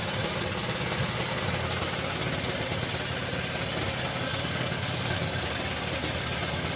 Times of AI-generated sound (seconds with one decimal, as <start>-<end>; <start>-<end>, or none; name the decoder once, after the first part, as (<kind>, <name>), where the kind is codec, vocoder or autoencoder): 4.3-5.6 (codec, DAC)